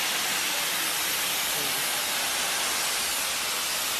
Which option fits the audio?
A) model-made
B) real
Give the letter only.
B